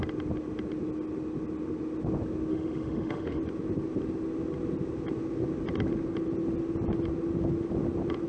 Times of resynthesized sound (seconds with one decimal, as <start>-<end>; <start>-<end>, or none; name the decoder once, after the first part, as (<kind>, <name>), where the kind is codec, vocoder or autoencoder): 2.5-3.4 (autoencoder, DAC-VAE)